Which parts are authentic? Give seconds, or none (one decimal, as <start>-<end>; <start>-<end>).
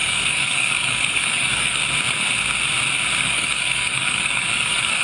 1.8-3.2